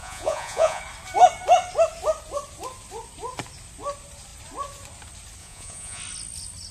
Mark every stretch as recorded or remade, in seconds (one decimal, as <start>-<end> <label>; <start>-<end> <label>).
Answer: 0.0-0.8 remade; 0.8-5.4 recorded; 5.4-6.0 remade; 6.0-6.7 recorded